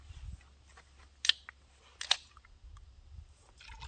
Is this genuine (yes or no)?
yes